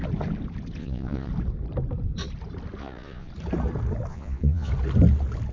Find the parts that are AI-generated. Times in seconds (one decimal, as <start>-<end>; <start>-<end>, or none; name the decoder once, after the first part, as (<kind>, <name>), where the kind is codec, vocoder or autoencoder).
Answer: 0.8-1.3 (vocoder, Vocos); 2.8-3.3; 4.1-4.7